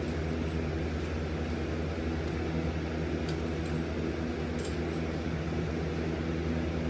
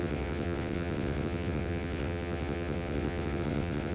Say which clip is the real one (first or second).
first